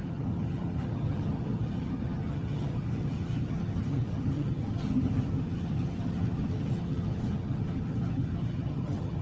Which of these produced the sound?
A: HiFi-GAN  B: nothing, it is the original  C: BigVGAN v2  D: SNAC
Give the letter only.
A